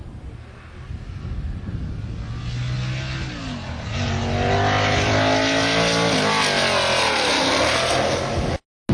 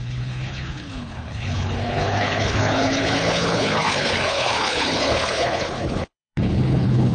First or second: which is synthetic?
second